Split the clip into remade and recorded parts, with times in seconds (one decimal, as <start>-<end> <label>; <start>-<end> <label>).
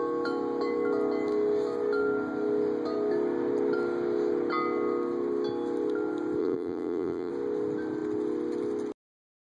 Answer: 0.0-6.4 recorded; 6.4-7.3 remade; 7.3-9.5 recorded